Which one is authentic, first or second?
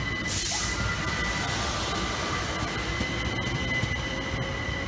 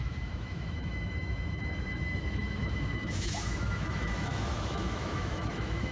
first